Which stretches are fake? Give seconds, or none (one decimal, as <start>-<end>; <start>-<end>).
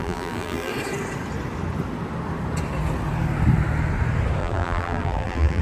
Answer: 0.0-0.7; 4.4-5.6